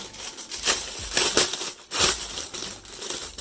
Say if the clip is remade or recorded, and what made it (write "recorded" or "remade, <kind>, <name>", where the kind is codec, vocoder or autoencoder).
recorded